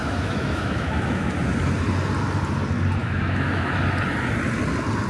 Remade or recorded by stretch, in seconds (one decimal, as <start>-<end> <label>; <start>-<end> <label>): 0.0-1.3 remade; 1.3-3.0 recorded; 3.0-3.8 remade; 3.8-5.1 recorded